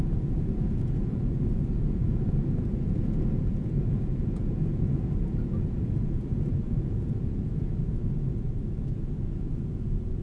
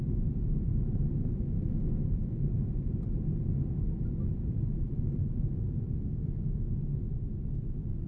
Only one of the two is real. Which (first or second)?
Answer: second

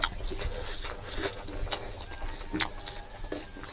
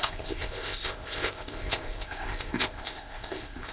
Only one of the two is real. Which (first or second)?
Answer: first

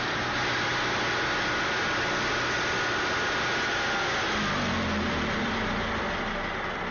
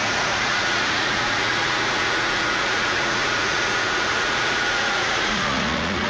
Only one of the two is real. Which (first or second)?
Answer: first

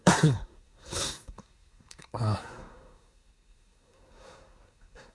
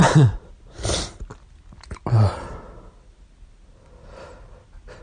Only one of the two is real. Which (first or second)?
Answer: second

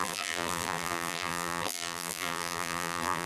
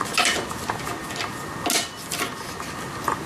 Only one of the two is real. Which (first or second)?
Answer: second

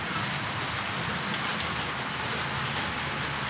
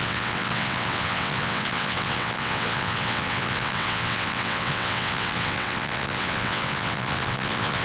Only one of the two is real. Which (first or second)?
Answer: first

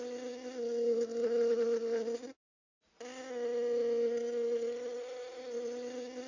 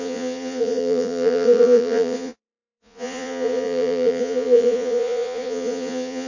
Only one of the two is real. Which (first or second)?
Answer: first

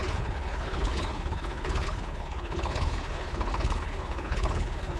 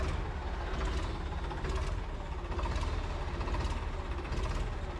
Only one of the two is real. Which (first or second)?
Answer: second